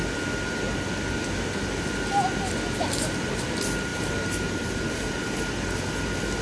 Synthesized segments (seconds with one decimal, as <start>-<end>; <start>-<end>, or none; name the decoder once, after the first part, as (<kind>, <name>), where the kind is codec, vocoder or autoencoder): 3.9-5.5 (vocoder, BigVGAN v2)